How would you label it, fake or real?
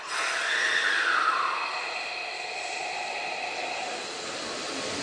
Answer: real